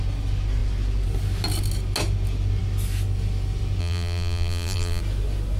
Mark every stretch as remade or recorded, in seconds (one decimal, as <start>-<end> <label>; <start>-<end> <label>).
0.0-3.8 recorded; 3.8-5.0 remade; 5.0-5.6 recorded